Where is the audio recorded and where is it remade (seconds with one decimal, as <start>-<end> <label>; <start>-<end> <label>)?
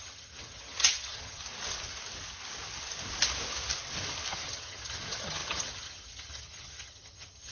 0.0-1.4 remade; 1.4-4.3 recorded; 4.3-7.5 remade